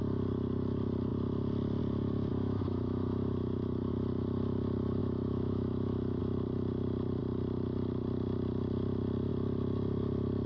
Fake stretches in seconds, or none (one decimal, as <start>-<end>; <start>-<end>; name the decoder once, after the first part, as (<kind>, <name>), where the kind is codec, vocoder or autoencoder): 2.3-3.9 (autoencoder, DAC-VAE); 5.0-6.2